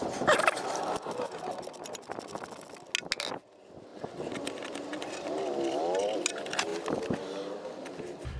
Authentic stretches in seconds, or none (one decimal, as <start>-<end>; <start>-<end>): 0.0-8.4